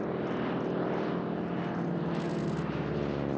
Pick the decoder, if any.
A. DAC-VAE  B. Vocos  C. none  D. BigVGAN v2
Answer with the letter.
C